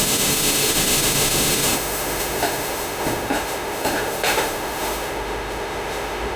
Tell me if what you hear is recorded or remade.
remade